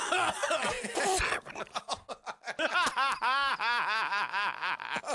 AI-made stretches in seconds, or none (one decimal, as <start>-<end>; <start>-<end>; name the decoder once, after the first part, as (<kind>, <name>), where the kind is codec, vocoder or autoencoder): none